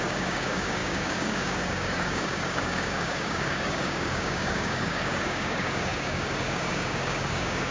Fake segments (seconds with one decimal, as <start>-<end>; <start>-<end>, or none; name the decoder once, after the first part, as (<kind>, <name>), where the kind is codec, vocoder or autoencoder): 0.0-7.7 (codec, DAC)